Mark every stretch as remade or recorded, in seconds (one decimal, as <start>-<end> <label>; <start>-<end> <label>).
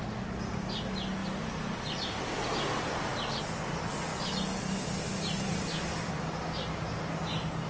0.0-7.7 recorded